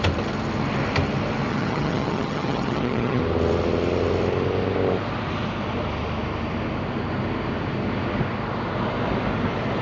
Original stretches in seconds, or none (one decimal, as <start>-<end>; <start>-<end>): 0.0-1.5; 3.2-9.8